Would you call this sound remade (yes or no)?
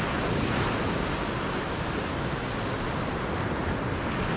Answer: no